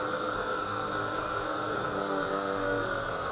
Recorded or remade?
remade